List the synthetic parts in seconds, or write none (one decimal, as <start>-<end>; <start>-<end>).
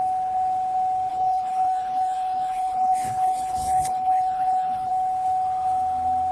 1.1-4.9